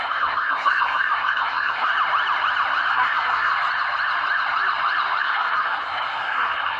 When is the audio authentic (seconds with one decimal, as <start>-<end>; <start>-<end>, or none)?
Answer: 1.9-2.9; 3.5-5.2